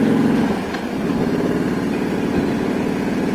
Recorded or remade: recorded